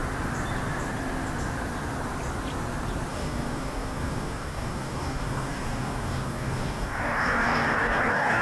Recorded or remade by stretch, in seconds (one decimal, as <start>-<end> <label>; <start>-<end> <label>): 0.0-3.1 recorded; 3.1-8.4 remade